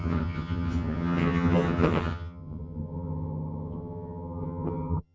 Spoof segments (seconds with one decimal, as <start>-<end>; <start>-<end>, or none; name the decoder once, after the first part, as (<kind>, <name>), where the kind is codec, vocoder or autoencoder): 0.0-5.1 (vocoder, HiFi-GAN)